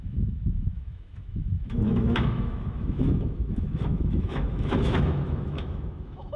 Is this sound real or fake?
fake